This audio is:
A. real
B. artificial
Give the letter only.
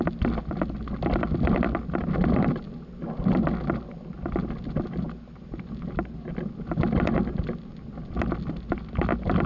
A